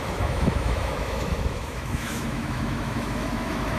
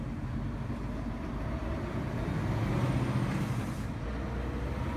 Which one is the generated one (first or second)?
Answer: first